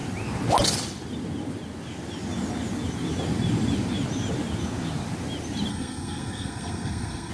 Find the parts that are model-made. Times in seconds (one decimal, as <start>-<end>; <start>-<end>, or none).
5.7-7.3